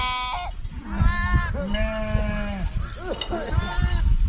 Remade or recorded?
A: recorded